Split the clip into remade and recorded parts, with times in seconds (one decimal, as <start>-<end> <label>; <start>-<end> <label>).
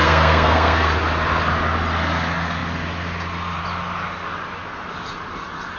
0.0-0.9 remade; 0.9-5.8 recorded